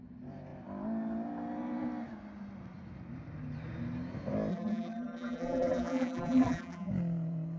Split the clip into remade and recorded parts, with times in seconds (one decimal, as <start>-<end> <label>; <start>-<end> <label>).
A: 0.0-4.5 recorded; 4.5-6.9 remade; 6.9-7.6 recorded